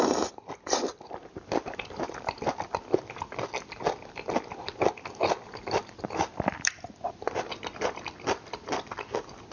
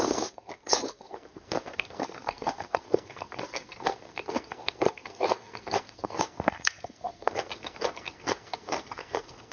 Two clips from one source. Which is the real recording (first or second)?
first